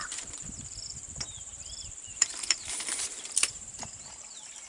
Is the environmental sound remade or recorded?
remade